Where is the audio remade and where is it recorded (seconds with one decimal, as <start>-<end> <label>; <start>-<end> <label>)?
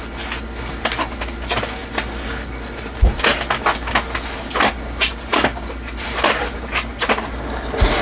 0.0-8.0 recorded